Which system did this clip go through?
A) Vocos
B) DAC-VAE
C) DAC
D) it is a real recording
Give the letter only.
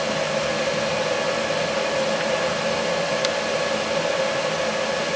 D